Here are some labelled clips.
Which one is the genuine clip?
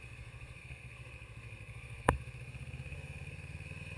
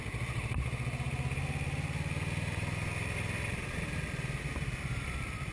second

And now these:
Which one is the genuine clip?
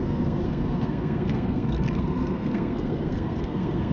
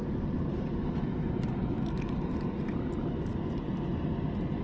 second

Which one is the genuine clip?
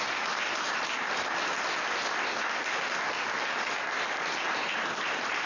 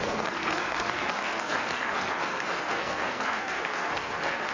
first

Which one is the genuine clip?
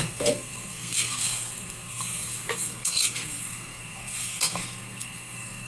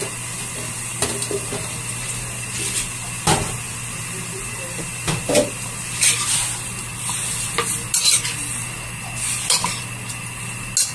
second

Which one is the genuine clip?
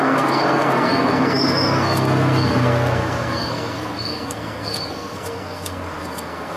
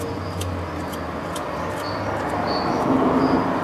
second